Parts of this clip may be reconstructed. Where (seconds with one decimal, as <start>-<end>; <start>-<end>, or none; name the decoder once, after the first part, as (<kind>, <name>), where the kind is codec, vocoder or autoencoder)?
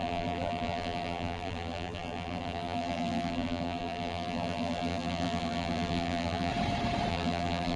0.0-6.5 (vocoder, BigVGAN v2); 7.1-7.8